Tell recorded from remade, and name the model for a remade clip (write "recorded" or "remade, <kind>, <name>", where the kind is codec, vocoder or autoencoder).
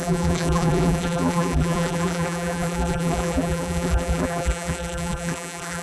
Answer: remade, vocoder, BigVGAN v2